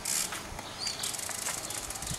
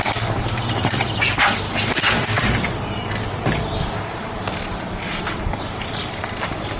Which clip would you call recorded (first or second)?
first